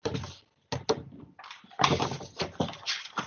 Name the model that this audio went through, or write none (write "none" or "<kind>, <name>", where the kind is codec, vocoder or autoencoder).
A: none